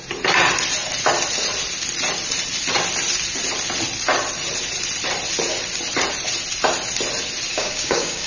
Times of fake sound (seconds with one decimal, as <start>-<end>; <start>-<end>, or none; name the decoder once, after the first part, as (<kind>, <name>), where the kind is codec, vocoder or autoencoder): 7.5-8.3 (codec, DAC)